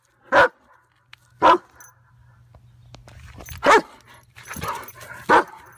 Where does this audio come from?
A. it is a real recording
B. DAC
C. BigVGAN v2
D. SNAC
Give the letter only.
A